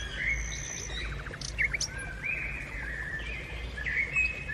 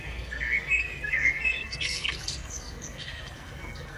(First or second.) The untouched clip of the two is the first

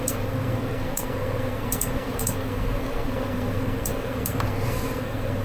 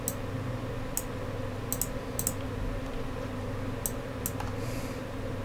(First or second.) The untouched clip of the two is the second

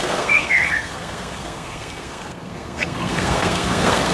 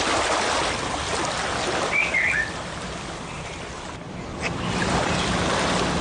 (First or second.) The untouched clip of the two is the second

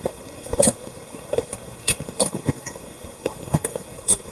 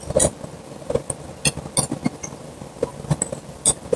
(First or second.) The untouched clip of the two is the second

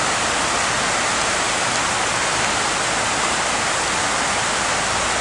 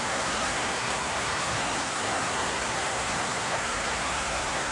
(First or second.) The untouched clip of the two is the first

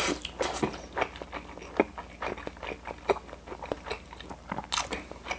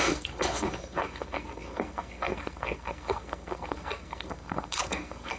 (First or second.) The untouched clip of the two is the first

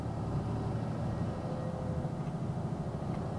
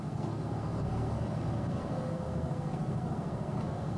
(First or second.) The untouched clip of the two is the first